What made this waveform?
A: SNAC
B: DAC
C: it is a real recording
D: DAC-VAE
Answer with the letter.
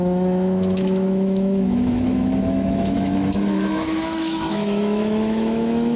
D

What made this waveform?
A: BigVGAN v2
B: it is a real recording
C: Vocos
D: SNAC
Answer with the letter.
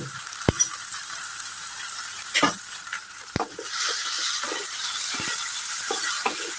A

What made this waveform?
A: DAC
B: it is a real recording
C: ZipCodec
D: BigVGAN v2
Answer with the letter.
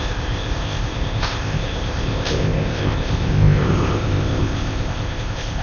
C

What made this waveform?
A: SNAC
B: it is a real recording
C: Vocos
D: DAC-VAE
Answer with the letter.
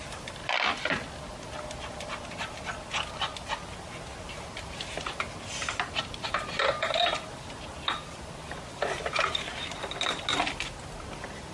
B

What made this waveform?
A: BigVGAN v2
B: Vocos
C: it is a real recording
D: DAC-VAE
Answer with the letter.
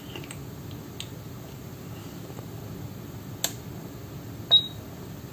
C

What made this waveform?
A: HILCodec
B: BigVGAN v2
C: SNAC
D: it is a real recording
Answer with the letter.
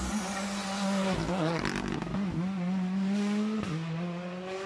D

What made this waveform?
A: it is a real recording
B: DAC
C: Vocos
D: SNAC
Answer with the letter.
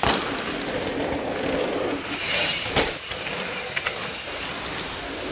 A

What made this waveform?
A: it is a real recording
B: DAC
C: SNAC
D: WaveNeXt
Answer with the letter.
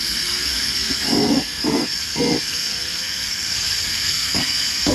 C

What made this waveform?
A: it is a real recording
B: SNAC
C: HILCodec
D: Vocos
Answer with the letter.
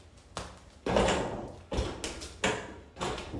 A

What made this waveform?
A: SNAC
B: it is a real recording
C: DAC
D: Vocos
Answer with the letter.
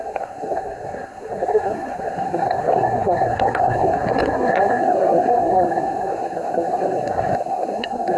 A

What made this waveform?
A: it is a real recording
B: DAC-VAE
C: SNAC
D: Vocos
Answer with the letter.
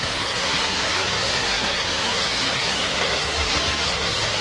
C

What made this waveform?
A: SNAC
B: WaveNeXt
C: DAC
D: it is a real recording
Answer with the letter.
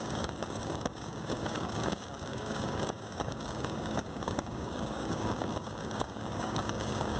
C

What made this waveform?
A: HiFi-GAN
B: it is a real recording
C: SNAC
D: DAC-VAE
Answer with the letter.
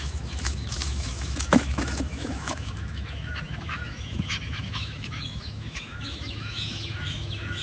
D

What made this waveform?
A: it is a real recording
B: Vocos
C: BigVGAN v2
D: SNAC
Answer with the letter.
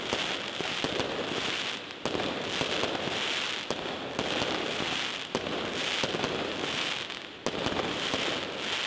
A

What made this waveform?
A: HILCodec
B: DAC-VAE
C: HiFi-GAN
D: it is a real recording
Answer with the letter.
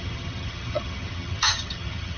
C